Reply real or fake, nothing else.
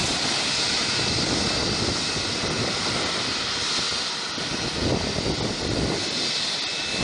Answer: real